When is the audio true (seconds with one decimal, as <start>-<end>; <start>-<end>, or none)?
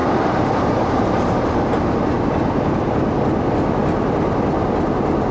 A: 2.2-5.3